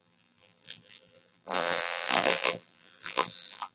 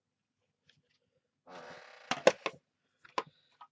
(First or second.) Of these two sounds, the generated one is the first